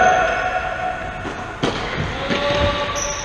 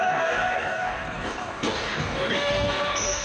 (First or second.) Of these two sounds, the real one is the first